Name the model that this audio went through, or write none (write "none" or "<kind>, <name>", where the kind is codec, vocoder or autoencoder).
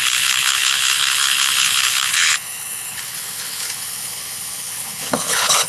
codec, HILCodec